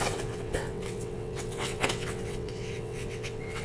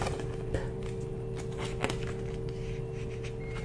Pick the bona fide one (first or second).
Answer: second